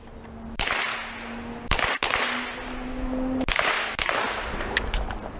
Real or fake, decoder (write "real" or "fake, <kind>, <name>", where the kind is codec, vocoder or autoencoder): real